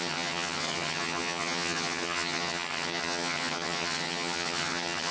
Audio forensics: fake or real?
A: fake